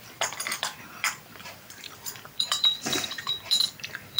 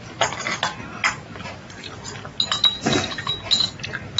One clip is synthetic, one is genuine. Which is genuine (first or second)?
second